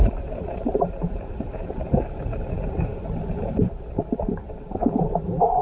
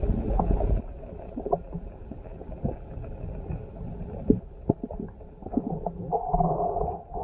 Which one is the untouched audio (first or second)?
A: second